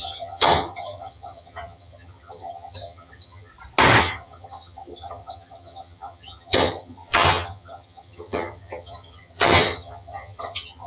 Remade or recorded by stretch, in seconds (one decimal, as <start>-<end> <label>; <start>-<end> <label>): 0.0-3.5 remade; 3.5-4.0 recorded; 4.0-10.9 remade